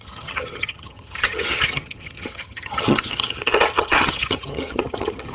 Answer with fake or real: fake